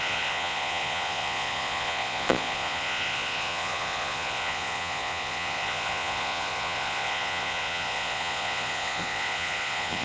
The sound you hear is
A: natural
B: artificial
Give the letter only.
B